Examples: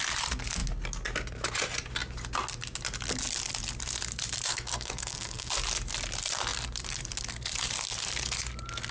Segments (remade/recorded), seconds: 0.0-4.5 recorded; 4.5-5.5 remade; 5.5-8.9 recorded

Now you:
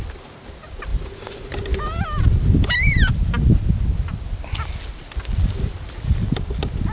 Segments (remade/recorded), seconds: 0.0-6.9 recorded

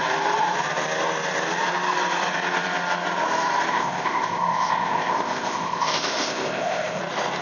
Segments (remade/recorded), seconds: 0.0-3.7 recorded; 3.7-7.0 remade; 7.0-7.4 recorded

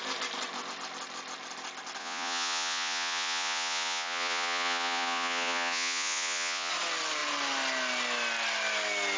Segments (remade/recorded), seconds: 0.0-2.0 recorded; 2.0-6.7 remade; 6.7-9.2 recorded

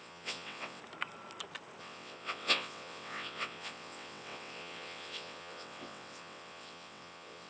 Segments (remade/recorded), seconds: 0.0-0.8 remade; 0.8-1.8 recorded; 1.8-7.5 remade